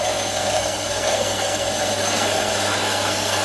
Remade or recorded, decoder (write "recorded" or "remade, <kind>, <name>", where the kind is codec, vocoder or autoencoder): remade, codec, SNAC